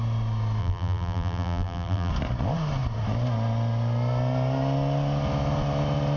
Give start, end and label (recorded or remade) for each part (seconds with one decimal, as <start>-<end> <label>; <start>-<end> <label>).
0.0-0.6 recorded; 0.6-2.1 remade; 2.1-6.2 recorded

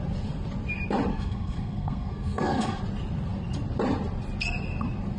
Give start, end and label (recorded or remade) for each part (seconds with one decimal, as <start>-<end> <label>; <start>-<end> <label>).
0.0-1.1 recorded; 1.1-2.8 remade; 2.8-5.2 recorded

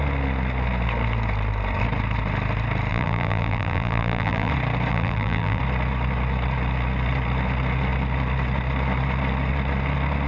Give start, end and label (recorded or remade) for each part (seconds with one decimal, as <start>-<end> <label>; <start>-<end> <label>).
0.0-2.9 recorded; 2.9-4.5 remade; 4.5-4.9 recorded; 4.9-5.6 remade; 5.6-10.3 recorded

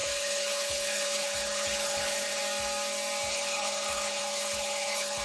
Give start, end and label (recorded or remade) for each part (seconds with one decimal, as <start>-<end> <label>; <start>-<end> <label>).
0.0-2.4 remade; 2.4-3.3 recorded; 3.3-5.2 remade

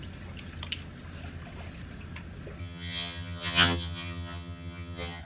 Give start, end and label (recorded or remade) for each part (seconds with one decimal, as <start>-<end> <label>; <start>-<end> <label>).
0.0-2.6 recorded; 2.6-5.2 remade

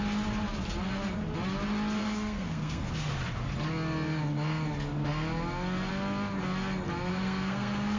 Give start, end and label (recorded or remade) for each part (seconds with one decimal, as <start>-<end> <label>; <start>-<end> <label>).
0.0-2.0 recorded; 2.0-2.9 remade; 2.9-7.1 recorded; 7.1-8.0 remade

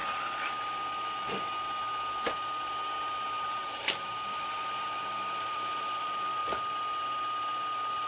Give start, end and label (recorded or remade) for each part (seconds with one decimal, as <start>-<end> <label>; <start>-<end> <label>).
0.0-4.3 recorded; 4.3-6.4 remade; 6.4-8.1 recorded

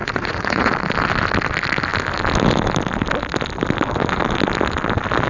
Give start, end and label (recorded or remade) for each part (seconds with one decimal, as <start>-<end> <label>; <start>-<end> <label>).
0.0-0.7 remade; 0.7-5.3 recorded